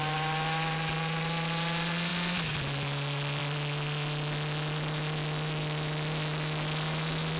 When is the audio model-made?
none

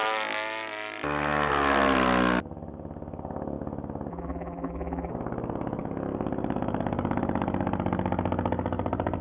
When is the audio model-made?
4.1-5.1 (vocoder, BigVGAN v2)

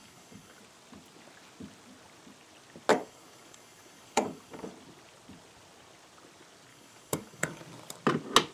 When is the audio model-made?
0.0-0.6 (codec, DAC); 2.9-4.7; 6.7-7.6

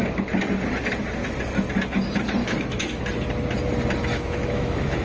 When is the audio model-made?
2.4-3.0 (autoencoder, DAC-VAE); 4.1-5.0

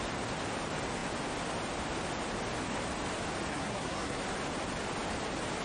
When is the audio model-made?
3.5-4.2 (codec, SNAC)